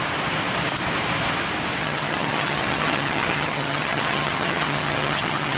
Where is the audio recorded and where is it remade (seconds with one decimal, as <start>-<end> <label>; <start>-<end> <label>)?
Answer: 0.0-1.8 recorded; 1.8-5.6 remade